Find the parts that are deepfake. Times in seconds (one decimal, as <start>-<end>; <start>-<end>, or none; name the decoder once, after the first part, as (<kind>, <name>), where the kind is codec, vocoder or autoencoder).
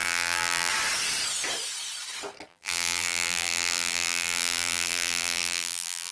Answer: 0.0-0.7 (vocoder, BigVGAN v2); 2.5-6.1